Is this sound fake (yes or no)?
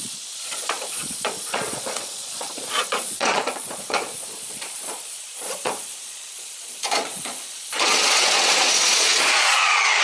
yes